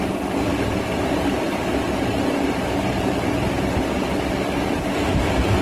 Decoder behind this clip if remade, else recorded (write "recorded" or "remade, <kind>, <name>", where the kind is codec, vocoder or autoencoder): recorded